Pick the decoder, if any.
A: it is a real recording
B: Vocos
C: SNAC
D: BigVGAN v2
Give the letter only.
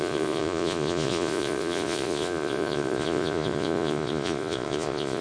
B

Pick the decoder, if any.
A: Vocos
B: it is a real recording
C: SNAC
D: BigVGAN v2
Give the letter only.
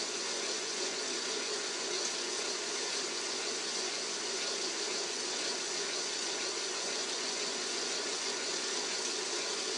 A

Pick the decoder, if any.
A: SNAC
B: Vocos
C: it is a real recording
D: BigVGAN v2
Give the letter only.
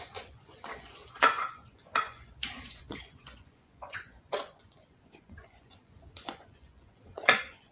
B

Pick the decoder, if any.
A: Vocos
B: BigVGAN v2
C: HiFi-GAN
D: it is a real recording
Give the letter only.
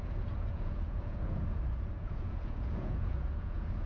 A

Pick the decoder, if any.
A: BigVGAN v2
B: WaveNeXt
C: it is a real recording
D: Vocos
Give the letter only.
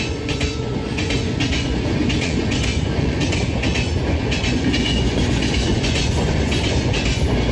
D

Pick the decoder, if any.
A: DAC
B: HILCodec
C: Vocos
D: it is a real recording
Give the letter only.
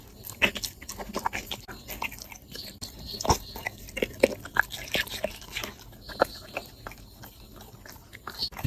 D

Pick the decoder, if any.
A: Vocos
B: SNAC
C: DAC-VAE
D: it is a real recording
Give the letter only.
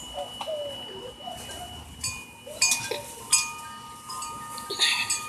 D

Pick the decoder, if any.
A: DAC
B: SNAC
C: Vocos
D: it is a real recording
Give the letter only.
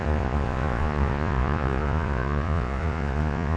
C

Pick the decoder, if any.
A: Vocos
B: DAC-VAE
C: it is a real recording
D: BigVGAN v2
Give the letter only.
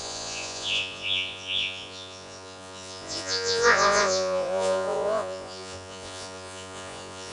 A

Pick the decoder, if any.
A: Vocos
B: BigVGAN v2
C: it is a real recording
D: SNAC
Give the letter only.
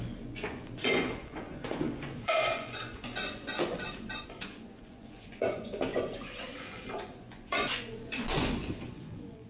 A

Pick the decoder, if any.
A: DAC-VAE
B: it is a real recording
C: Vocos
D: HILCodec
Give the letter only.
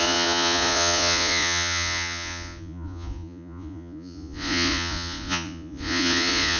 C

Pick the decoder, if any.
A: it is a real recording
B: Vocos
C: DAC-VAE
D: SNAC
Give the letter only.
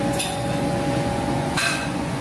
B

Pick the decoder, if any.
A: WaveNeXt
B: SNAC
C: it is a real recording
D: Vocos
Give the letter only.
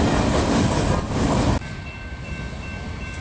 C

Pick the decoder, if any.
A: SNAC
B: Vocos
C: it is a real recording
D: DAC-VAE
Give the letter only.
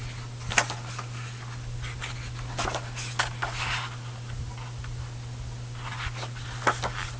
C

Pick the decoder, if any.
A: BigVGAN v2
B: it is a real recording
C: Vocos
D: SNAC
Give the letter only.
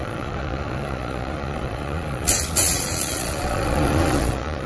C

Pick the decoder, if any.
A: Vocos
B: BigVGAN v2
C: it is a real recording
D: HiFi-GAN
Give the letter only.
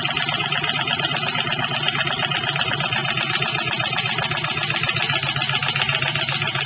C